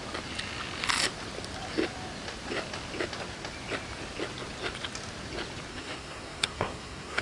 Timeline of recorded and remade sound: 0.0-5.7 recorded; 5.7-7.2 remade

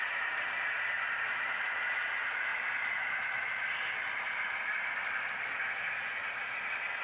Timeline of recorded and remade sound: 0.0-7.0 recorded

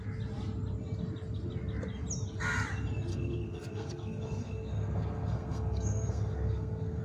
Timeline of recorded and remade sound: 0.0-3.1 recorded; 3.1-7.0 remade

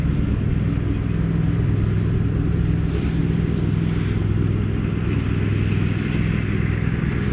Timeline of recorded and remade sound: 0.0-7.3 recorded

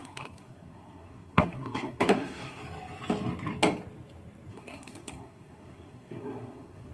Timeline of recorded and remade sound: 0.0-2.6 remade; 2.6-4.5 recorded; 4.5-6.9 remade

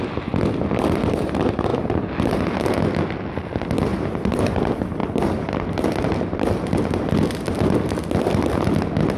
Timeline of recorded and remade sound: 0.0-9.2 recorded

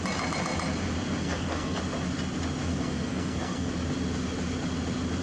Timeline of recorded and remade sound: 0.0-1.2 recorded; 1.2-1.8 remade; 1.8-2.7 recorded; 2.7-3.7 remade; 3.7-5.2 recorded